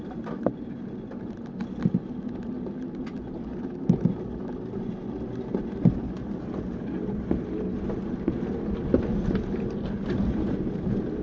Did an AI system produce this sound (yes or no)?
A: no